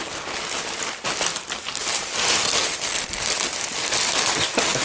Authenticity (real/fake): real